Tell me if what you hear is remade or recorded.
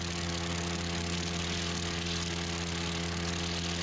recorded